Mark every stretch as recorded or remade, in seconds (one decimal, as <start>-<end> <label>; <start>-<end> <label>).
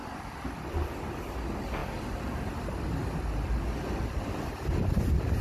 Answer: 0.0-5.4 recorded